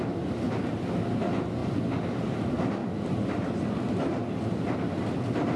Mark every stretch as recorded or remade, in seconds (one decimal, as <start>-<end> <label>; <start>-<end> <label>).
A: 0.0-5.6 recorded

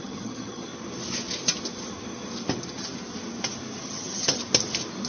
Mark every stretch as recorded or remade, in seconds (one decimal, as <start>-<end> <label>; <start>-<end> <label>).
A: 0.0-0.7 remade; 0.7-3.8 recorded; 3.8-4.4 remade; 4.4-5.1 recorded

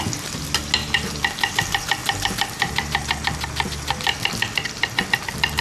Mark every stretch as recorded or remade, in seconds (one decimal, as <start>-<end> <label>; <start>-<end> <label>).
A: 0.0-5.6 recorded

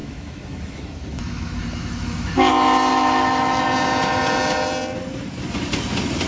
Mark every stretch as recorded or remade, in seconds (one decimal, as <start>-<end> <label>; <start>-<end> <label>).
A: 0.0-2.5 remade; 2.5-2.9 recorded; 2.9-3.6 remade; 3.6-6.3 recorded